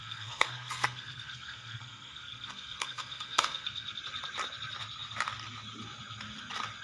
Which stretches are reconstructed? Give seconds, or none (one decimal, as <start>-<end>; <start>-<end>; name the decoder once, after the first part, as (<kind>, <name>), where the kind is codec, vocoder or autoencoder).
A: 0.0-4.0 (codec, SNAC)